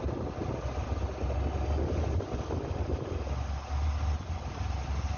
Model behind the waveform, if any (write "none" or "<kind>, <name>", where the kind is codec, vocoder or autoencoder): none